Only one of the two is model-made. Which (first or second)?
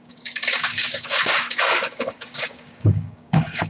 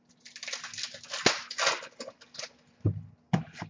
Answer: first